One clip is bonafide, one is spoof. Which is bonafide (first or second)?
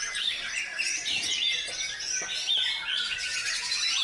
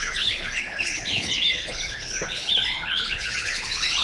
first